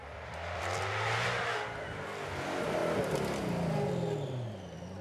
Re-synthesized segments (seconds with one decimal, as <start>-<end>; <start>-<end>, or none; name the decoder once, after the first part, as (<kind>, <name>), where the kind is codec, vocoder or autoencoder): none